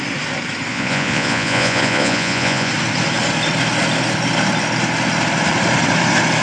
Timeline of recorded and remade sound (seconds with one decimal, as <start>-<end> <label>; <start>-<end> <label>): 0.0-0.7 recorded; 0.7-2.7 remade; 2.7-6.4 recorded

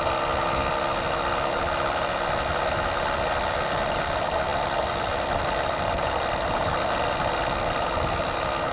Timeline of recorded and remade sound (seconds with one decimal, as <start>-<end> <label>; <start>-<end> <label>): 0.0-8.7 recorded

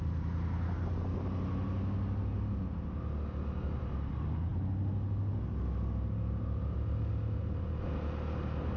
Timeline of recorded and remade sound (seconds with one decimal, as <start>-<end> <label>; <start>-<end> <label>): 0.0-8.8 recorded

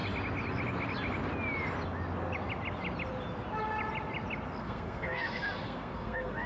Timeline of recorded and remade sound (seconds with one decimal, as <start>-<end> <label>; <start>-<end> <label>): 0.0-4.6 recorded; 4.6-6.5 remade

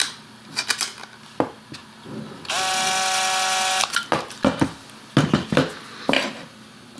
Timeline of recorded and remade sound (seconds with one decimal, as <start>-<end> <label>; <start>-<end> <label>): 0.0-7.0 recorded

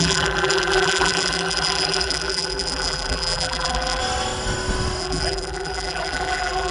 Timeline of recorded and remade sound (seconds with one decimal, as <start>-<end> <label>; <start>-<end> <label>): 0.0-4.0 remade; 4.0-5.0 recorded; 5.0-6.7 remade

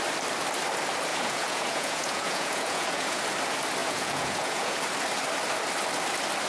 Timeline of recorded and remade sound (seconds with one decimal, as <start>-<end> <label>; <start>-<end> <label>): 0.0-1.1 recorded; 1.1-3.2 remade; 3.2-3.8 recorded; 3.8-4.8 remade; 4.8-6.5 recorded

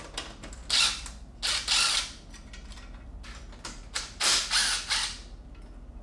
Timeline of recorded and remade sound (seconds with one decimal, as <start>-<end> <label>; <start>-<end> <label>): 0.0-6.0 recorded